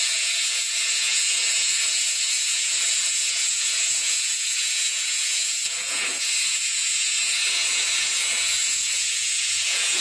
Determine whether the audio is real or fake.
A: fake